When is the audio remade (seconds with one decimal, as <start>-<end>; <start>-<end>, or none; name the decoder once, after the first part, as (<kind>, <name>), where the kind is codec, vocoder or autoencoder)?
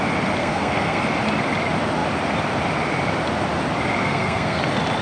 0.4-1.0 (codec, SNAC); 4.0-4.6